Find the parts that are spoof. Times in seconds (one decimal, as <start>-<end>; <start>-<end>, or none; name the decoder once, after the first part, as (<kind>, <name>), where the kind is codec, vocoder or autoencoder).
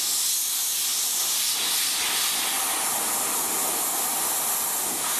none